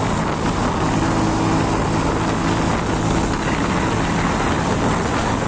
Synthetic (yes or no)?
no